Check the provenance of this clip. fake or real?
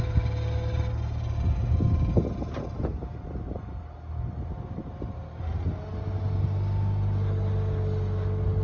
real